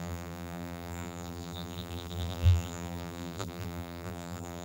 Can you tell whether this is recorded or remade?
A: remade